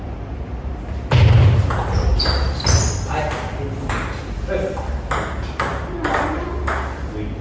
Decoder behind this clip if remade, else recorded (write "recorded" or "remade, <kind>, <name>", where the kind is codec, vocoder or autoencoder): recorded